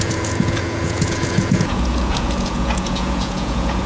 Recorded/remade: remade